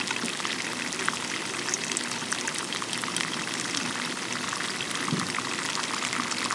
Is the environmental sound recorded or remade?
recorded